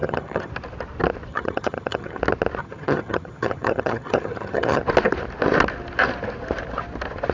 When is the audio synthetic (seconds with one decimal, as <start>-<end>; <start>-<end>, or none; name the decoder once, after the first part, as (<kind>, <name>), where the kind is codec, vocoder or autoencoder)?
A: 0.0-0.5 (vocoder, HiFi-GAN); 1.3-2.2; 2.6-4.8